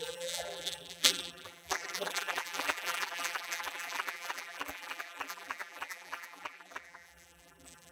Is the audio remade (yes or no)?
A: yes